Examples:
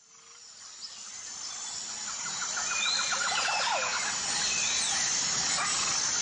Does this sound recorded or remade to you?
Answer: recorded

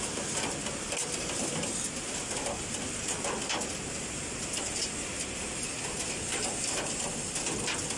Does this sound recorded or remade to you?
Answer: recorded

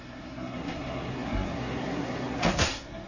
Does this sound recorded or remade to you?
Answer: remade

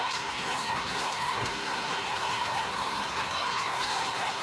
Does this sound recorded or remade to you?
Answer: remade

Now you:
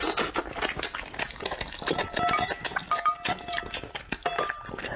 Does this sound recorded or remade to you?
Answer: recorded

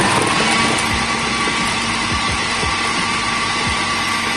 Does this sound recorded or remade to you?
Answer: recorded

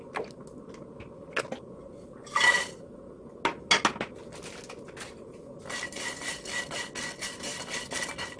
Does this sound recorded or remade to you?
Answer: recorded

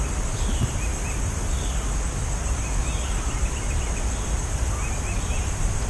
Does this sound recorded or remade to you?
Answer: recorded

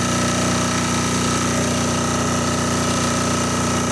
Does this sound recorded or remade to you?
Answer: recorded